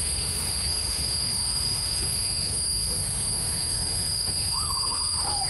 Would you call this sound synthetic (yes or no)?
yes